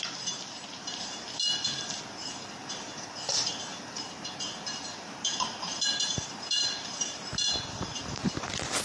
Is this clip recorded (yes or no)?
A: no